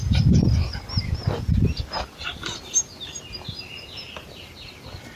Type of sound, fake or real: real